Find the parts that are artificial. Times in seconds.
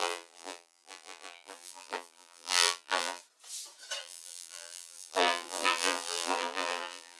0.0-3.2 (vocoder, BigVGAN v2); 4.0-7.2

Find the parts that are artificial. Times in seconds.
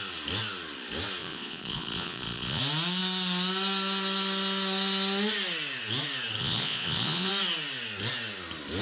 1.2-2.6 (vocoder, Vocos); 6.4-7.3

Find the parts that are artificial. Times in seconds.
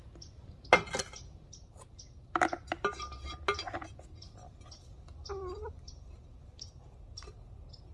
none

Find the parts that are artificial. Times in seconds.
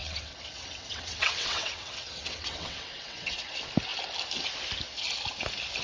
0.0-3.5 (vocoder, WaveNeXt)